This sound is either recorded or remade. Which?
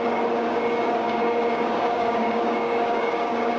remade